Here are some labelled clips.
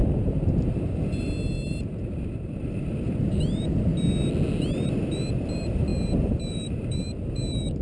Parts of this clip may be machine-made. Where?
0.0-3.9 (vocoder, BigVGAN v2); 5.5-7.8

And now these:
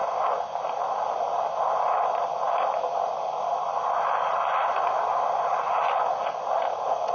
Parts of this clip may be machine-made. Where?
none

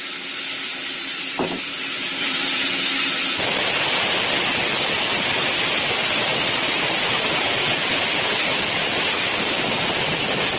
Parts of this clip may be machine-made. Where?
0.7-2.7 (vocoder, BigVGAN v2); 7.1-8.1

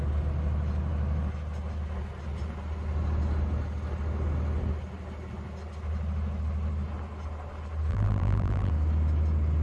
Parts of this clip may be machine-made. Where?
7.9-8.7 (vocoder, BigVGAN v2)

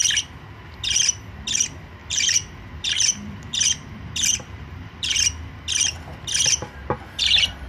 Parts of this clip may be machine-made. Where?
2.0-5.2 (vocoder, BigVGAN v2); 6.8-7.7

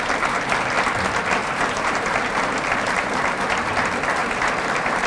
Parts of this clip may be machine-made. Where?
1.4-3.7 (vocoder, BigVGAN v2); 4.2-5.1